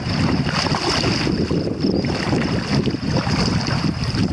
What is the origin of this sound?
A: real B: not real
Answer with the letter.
A